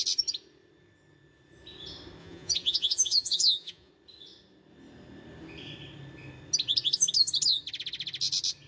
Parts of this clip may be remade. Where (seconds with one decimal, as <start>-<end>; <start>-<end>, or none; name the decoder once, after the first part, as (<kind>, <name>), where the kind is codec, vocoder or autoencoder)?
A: 2.2-3.9 (vocoder, Vocos)